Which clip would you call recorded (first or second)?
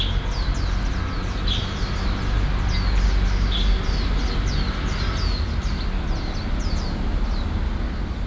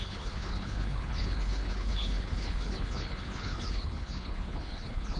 first